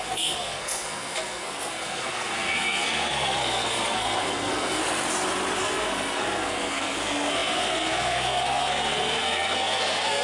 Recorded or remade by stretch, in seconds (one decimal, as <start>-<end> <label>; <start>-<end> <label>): 0.0-4.8 remade; 4.8-5.6 recorded; 5.6-10.2 remade